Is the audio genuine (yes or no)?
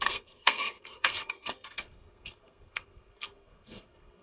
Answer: no